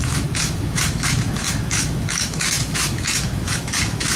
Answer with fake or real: fake